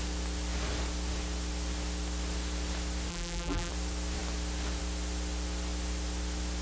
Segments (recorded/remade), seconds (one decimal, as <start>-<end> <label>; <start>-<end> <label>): 0.0-3.1 recorded; 3.1-3.7 remade; 3.7-6.6 recorded